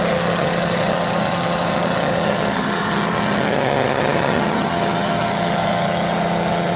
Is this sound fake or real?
fake